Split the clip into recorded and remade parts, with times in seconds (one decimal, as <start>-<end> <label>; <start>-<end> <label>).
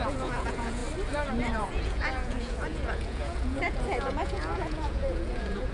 0.0-0.8 remade; 0.8-1.4 recorded; 1.4-5.7 remade